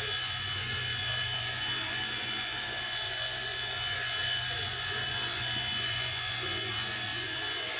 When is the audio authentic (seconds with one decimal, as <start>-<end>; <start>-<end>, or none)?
none